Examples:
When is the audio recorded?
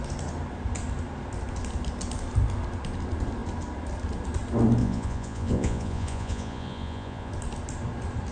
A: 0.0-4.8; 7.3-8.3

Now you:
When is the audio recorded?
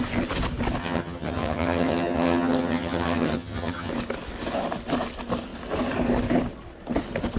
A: 0.0-0.8; 3.9-7.4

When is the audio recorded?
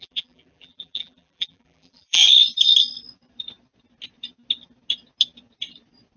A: 2.2-6.2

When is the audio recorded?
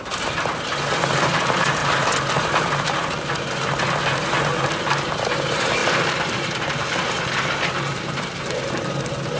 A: 0.0-5.8; 9.0-9.4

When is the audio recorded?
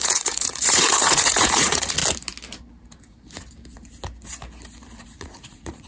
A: 2.0-5.0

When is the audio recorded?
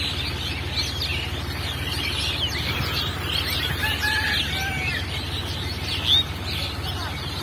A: 0.0-7.4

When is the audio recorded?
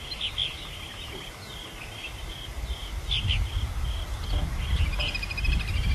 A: 0.0-5.9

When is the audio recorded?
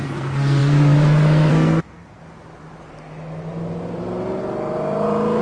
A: 2.2-5.4